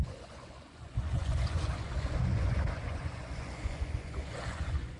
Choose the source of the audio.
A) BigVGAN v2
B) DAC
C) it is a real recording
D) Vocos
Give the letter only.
D